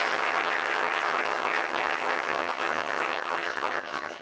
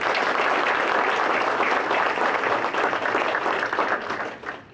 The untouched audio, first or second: second